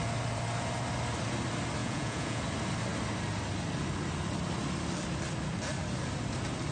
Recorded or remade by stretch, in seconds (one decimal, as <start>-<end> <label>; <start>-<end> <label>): 0.0-1.8 recorded; 1.8-2.4 remade; 2.4-6.7 recorded